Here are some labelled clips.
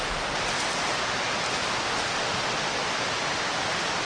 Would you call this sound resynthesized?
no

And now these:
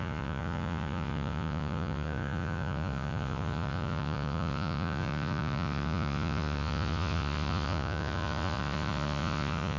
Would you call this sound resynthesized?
yes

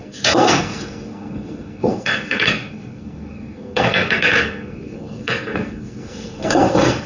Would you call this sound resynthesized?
yes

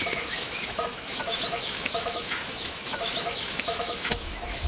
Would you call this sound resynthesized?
yes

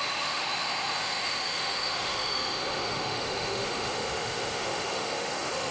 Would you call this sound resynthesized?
yes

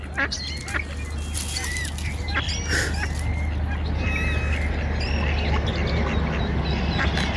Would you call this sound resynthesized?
no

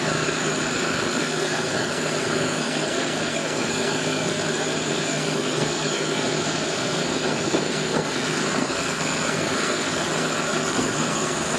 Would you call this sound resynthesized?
yes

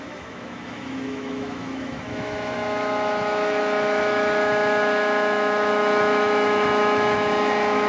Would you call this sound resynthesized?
yes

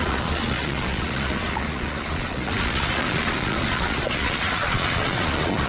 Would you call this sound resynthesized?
yes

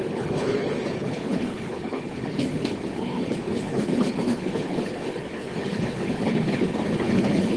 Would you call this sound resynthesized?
yes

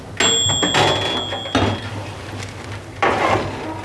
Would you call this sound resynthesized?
no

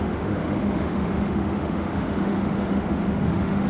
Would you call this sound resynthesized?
yes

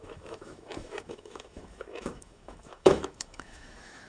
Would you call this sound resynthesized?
yes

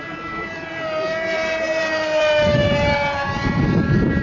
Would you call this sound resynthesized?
yes